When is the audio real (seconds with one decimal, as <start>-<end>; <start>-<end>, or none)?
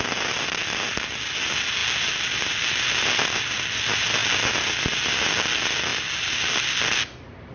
0.0-7.5